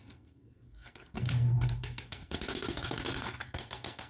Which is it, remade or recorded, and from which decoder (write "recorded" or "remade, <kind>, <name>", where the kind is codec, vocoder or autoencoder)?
remade, codec, SNAC